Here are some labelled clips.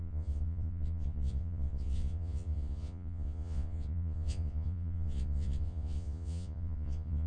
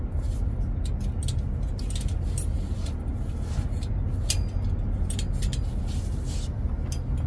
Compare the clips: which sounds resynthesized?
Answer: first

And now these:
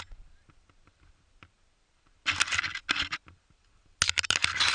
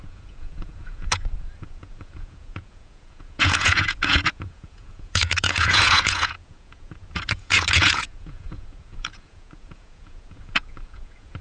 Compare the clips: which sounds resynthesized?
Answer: second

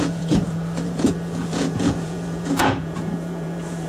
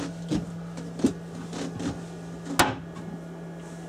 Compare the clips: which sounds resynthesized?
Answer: first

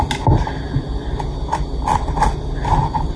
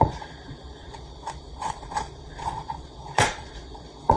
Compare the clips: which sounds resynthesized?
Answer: second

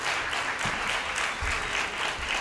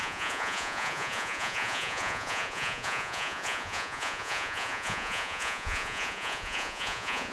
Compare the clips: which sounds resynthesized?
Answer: second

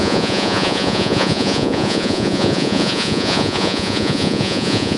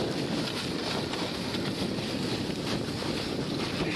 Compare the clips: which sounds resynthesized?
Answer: first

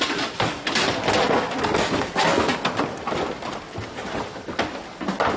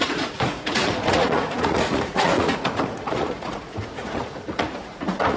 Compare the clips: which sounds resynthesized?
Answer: second